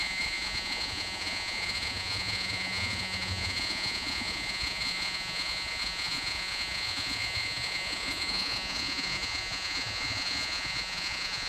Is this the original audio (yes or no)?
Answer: no